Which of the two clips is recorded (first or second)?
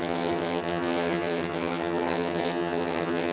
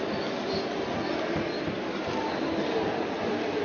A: second